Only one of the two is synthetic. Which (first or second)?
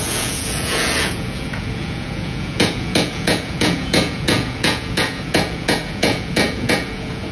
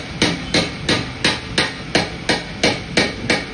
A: first